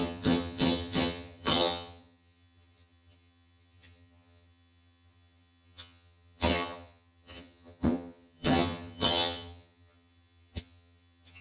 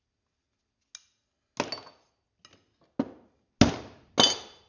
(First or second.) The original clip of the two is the second